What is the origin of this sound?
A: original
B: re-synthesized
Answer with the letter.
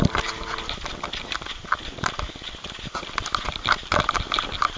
A